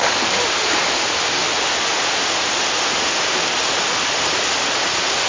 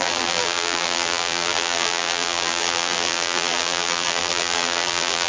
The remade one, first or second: second